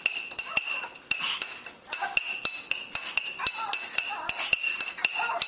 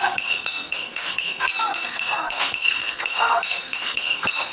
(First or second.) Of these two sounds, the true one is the first